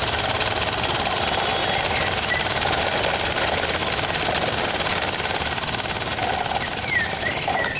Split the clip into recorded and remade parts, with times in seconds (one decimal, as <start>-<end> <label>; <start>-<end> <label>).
0.0-7.8 recorded